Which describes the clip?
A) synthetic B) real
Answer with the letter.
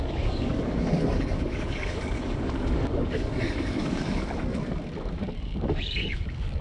A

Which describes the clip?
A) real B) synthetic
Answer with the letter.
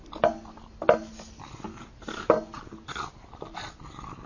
A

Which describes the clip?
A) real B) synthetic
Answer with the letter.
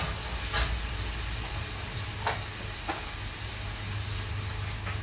A